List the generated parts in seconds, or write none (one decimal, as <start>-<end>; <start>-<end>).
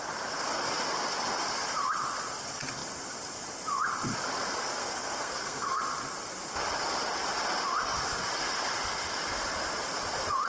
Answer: 4.8-5.8